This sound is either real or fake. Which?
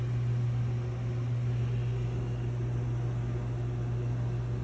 real